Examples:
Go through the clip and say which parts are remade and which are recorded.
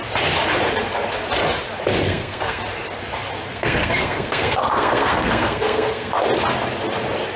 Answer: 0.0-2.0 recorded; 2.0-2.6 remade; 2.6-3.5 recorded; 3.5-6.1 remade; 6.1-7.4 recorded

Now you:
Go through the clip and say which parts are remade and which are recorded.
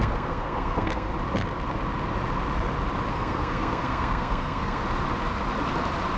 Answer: 0.0-1.1 remade; 1.1-3.1 recorded; 3.1-4.8 remade; 4.8-6.2 recorded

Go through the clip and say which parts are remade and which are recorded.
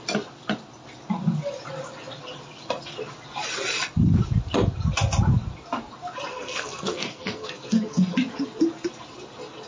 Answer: 0.0-6.3 recorded; 6.3-8.1 remade; 8.1-9.7 recorded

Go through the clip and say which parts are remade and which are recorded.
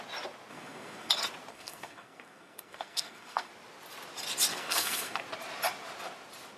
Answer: 0.0-0.5 recorded; 0.5-1.1 remade; 1.1-1.5 recorded; 1.5-3.5 remade; 3.5-4.5 recorded; 4.5-5.2 remade; 5.2-6.6 recorded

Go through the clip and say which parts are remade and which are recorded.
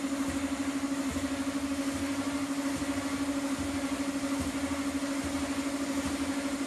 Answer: 0.0-6.7 recorded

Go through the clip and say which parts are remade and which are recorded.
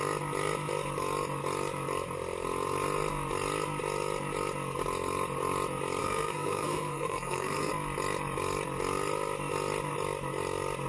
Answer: 0.0-6.0 recorded; 6.0-7.7 remade; 7.7-10.9 recorded